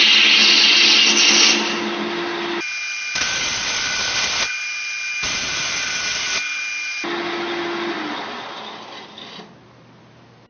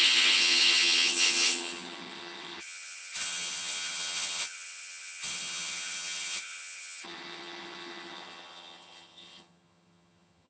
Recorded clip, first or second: first